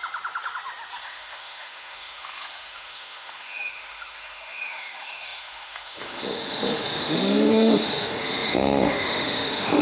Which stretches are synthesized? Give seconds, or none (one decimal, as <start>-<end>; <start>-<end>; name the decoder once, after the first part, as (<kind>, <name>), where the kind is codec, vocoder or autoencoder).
1.0-9.8 (autoencoder, DAC-VAE)